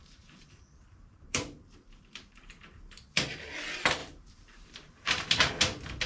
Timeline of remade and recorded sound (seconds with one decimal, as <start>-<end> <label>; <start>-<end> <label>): 0.0-2.6 remade; 2.6-4.0 recorded; 4.0-5.5 remade; 5.5-6.1 recorded